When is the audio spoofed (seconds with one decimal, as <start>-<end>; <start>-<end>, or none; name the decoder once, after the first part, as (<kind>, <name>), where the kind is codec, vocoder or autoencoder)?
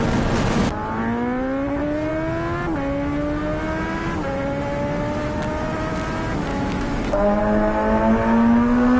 6.5-7.4 (autoencoder, DAC-VAE)